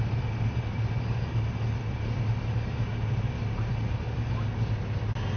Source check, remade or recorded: recorded